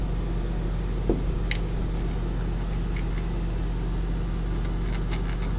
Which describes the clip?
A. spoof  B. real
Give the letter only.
B